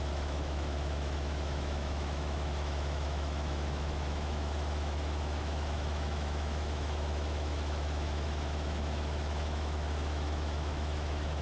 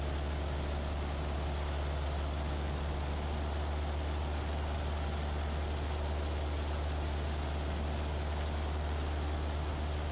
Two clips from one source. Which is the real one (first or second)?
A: second